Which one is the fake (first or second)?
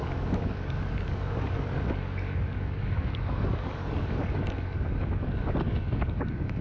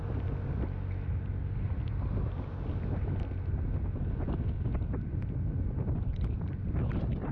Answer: first